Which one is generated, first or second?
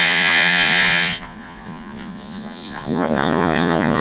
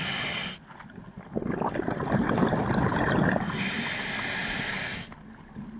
first